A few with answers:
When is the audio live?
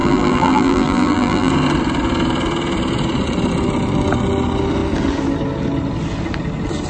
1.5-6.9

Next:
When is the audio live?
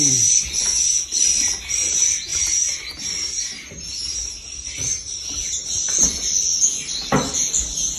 0.0-8.0